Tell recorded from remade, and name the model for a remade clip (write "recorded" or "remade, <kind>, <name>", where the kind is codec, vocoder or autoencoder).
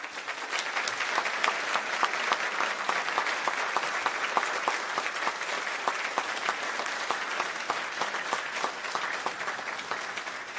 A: recorded